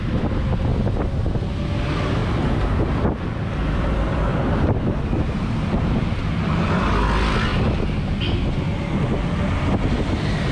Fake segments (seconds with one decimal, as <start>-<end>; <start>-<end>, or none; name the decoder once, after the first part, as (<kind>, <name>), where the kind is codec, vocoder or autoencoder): 4.3-6.0 (vocoder, BigVGAN v2)